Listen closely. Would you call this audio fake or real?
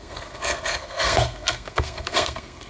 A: fake